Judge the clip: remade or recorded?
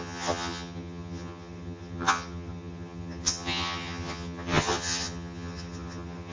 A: remade